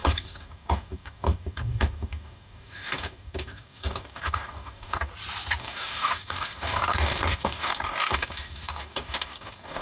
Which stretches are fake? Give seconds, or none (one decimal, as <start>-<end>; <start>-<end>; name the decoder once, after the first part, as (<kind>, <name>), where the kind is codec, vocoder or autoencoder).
0.0-5.1 (codec, DAC); 5.6-9.8